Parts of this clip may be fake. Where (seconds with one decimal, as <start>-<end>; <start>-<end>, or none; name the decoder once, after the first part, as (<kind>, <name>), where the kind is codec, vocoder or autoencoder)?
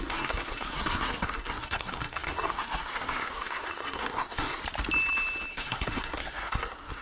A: 0.0-4.6 (codec, SNAC); 5.5-7.0